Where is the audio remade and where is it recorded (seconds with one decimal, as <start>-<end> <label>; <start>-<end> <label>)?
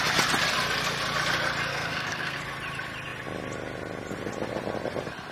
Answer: 0.0-1.7 recorded; 1.7-2.4 remade; 2.4-5.3 recorded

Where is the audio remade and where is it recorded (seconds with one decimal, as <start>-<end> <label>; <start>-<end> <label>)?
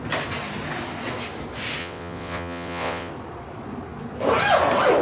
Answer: 0.0-1.8 recorded; 1.8-3.1 remade; 3.1-5.0 recorded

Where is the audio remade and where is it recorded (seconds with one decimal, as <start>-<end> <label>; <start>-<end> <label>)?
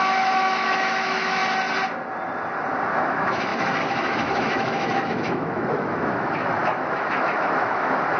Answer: 0.0-1.4 remade; 1.4-2.9 recorded; 2.9-8.2 remade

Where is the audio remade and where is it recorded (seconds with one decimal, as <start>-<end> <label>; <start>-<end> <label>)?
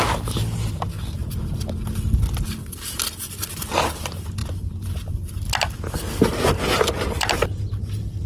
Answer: 0.0-8.3 recorded